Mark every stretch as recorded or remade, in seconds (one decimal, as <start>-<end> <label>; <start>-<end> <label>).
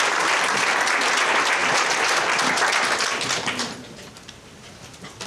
0.0-5.3 recorded